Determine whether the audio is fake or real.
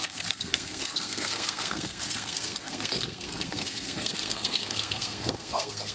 fake